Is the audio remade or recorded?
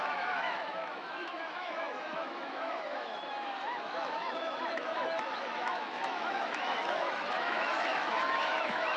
remade